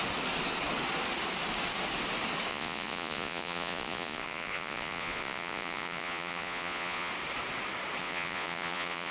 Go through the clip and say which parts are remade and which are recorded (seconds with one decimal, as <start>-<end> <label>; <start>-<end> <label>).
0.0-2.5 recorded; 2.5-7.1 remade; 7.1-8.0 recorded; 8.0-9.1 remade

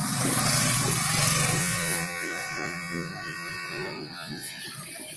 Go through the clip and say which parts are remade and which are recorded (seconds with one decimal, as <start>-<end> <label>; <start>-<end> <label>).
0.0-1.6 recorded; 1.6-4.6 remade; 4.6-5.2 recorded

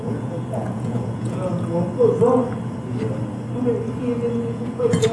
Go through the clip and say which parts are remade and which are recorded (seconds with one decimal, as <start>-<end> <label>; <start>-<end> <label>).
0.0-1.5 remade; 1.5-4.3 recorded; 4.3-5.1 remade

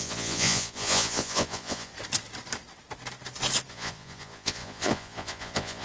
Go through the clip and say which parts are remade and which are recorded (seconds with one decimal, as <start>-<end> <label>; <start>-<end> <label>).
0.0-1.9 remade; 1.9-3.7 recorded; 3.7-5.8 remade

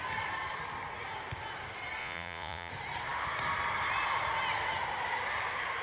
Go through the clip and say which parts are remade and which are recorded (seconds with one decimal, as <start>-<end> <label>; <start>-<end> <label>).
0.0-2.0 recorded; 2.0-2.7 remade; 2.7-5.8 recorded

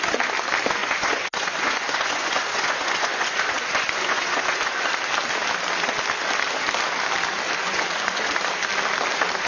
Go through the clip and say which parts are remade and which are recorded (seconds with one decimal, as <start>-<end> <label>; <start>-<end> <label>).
0.0-0.8 recorded; 0.8-4.9 remade; 4.9-7.6 recorded; 7.6-8.3 remade; 8.3-9.5 recorded